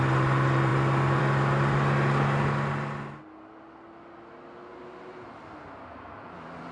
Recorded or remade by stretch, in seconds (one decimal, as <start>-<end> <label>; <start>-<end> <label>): 0.0-6.7 recorded